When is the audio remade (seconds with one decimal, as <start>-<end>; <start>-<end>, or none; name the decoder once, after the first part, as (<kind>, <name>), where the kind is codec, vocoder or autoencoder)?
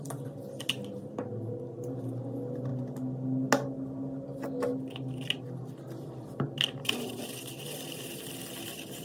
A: none